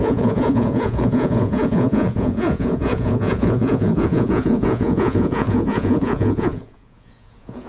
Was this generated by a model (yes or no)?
yes